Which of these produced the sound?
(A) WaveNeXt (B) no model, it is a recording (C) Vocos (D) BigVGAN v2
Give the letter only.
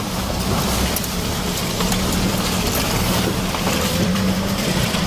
D